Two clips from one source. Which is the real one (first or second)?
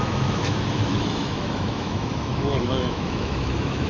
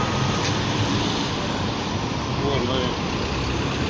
second